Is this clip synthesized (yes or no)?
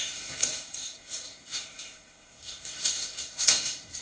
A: yes